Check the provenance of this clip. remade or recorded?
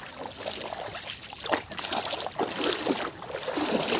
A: recorded